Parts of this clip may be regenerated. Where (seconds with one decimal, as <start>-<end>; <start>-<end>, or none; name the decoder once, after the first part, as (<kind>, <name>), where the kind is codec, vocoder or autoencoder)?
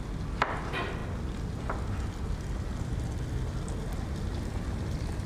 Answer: none